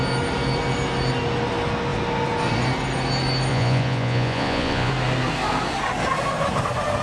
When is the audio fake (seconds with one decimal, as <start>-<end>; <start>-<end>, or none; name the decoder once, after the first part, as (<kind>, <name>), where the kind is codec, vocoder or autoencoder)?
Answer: 3.5-4.9 (vocoder, Vocos)